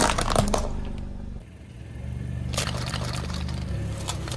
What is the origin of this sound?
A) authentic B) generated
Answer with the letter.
A